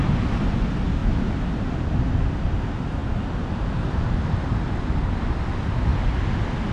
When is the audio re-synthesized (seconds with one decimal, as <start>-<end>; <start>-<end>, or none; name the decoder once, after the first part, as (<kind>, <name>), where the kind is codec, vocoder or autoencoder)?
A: none